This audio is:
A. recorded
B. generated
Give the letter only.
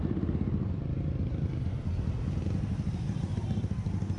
B